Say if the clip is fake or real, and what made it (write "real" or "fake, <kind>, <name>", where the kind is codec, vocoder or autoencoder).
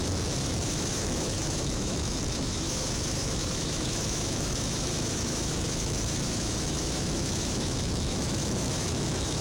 fake, autoencoder, DAC-VAE